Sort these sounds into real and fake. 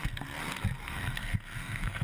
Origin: fake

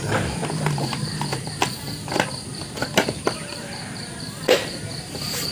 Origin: fake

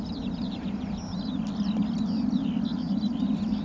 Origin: real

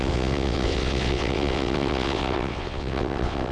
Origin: fake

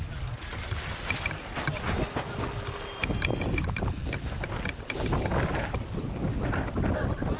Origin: real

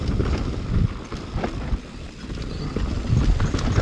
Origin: real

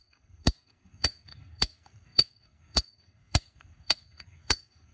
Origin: fake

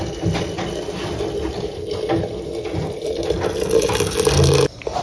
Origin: real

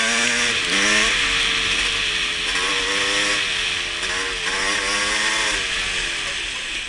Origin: real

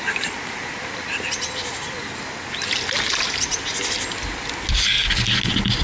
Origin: real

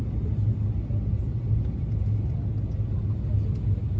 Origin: real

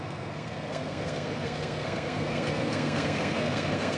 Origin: fake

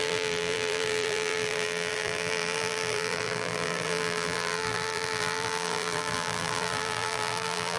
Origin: fake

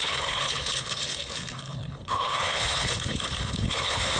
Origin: fake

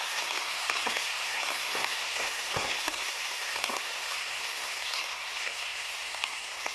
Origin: fake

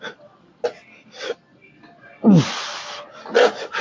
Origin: real